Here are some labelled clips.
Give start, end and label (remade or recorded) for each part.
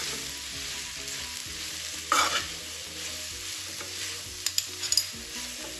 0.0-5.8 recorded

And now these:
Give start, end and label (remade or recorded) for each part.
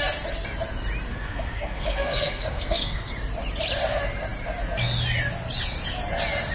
0.0-1.1 recorded; 1.1-3.1 remade; 3.1-6.5 recorded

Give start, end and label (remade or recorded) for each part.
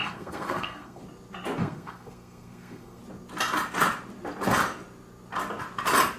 0.0-1.0 remade; 1.0-1.6 recorded; 1.6-3.0 remade; 3.0-6.2 recorded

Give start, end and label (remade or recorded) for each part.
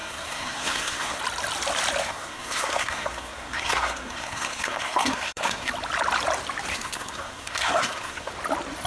0.0-1.2 remade; 1.2-2.0 recorded; 2.0-5.7 remade; 5.7-6.7 recorded; 6.7-8.3 remade; 8.3-8.9 recorded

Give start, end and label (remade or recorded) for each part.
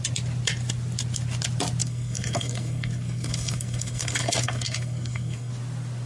0.0-1.8 recorded; 1.8-5.5 remade; 5.5-6.1 recorded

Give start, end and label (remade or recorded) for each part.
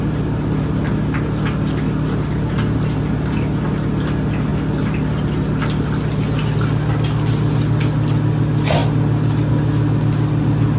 0.0-10.8 recorded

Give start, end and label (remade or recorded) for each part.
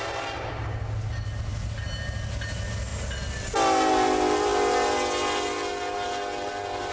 0.0-6.9 recorded